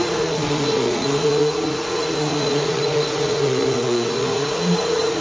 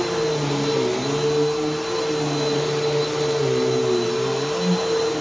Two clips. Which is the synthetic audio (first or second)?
first